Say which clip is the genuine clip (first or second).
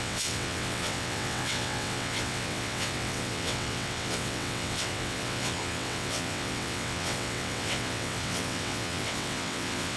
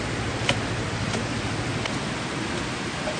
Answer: second